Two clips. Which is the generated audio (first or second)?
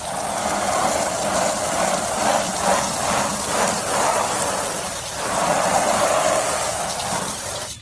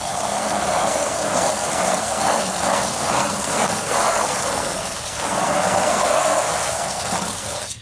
second